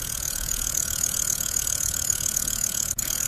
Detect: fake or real fake